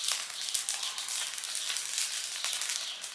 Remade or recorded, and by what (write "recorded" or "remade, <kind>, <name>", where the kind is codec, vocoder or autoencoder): recorded